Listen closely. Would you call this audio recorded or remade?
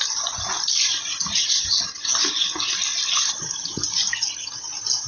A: recorded